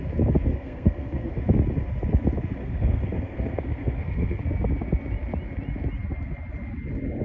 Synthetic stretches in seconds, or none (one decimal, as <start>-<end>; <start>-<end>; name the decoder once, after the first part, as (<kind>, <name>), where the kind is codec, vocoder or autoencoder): 0.5-1.4 (codec, SNAC); 2.6-4.4